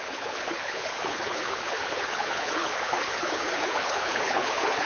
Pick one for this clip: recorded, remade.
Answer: remade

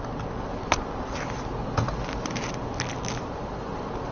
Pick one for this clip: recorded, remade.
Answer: recorded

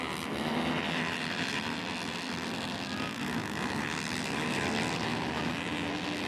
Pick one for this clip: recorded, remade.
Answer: recorded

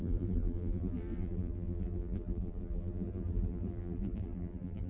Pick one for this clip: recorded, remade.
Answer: remade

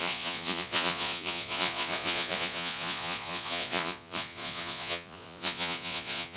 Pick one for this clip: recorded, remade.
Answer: remade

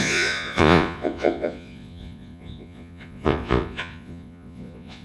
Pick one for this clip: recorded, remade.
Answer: remade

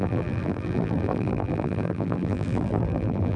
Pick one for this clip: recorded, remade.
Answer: remade